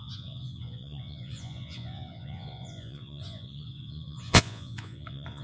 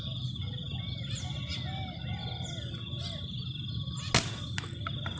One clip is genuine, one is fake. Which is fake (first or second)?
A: first